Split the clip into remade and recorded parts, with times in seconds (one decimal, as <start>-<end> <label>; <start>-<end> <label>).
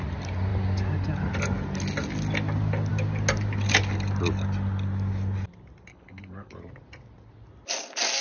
0.0-5.9 recorded; 5.9-6.6 remade; 6.6-8.2 recorded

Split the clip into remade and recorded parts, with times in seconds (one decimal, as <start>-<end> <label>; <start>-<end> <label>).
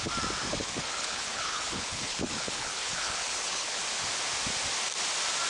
0.0-0.5 recorded; 0.5-3.8 remade; 3.8-5.5 recorded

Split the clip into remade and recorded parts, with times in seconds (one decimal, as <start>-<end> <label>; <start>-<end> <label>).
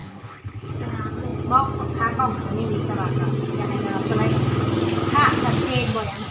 0.0-0.7 remade; 0.7-6.3 recorded